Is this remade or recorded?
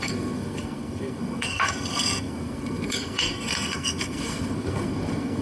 remade